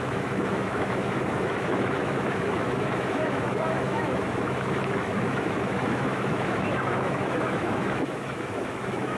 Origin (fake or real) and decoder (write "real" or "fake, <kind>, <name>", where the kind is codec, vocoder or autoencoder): fake, autoencoder, DAC-VAE